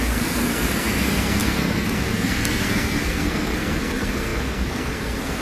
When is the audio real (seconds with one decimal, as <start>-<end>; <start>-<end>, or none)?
none